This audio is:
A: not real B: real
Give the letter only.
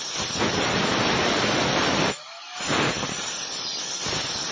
B